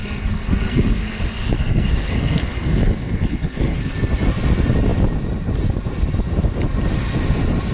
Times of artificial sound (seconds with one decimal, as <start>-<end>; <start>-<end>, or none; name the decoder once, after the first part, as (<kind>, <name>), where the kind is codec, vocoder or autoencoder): 0.0-3.9 (codec, SNAC)